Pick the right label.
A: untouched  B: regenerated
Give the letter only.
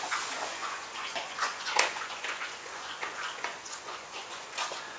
B